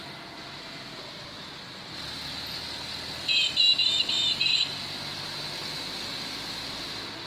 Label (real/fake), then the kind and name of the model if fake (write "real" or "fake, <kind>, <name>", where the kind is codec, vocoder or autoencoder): real